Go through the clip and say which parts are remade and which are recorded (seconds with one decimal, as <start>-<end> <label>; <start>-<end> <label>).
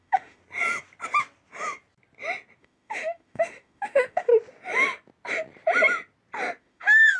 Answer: 0.0-0.4 remade; 0.4-2.6 recorded; 2.6-4.3 remade; 4.3-6.6 recorded; 6.6-7.2 remade